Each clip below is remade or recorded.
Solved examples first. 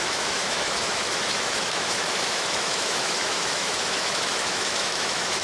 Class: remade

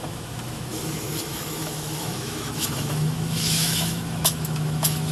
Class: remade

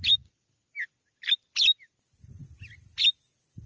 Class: recorded